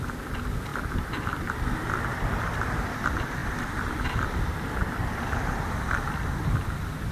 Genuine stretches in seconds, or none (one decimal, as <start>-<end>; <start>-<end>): 0.0-3.4; 5.1-7.1